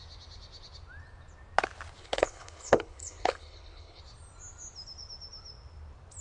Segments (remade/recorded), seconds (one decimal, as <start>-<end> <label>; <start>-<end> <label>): 0.0-2.0 recorded; 2.0-4.0 remade; 4.0-6.2 recorded